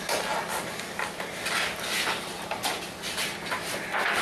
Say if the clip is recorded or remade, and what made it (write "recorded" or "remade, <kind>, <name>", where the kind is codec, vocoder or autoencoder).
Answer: recorded